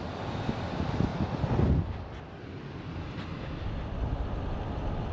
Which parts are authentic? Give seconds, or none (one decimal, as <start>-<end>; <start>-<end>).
0.0-5.1